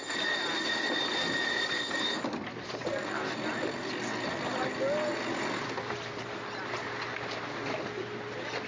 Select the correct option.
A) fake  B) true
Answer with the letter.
B